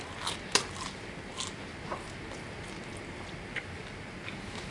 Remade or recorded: recorded